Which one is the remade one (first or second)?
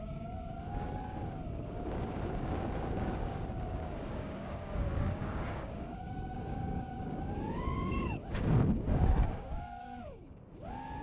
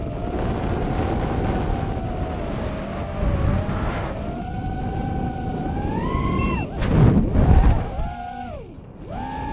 first